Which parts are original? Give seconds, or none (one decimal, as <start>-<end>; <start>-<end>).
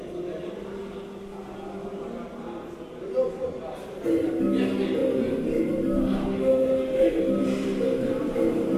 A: 0.0-6.0; 7.2-8.8